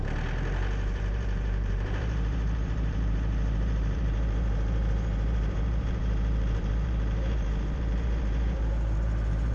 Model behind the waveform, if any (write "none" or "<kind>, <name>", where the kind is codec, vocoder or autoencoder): vocoder, BigVGAN v2